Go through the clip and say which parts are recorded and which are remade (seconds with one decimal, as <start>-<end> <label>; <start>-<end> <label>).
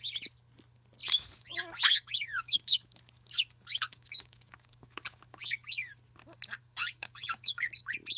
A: 0.0-1.0 recorded; 1.0-5.9 remade; 5.9-6.6 recorded; 6.6-7.7 remade; 7.7-8.2 recorded